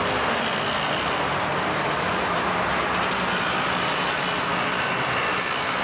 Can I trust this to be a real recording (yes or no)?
yes